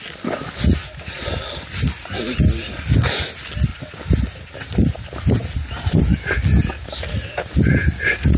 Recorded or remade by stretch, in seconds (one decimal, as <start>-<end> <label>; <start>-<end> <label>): 0.0-0.8 recorded; 0.8-1.7 remade; 1.7-3.7 recorded; 3.7-6.0 remade; 6.0-6.6 recorded; 6.6-7.6 remade; 7.6-8.4 recorded